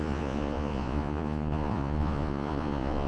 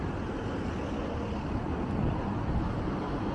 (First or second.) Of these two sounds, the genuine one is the second